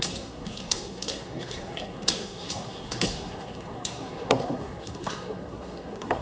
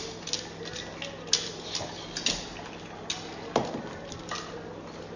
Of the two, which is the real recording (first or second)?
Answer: second